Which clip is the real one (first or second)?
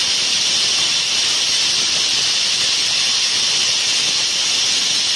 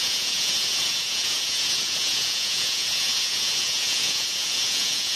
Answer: first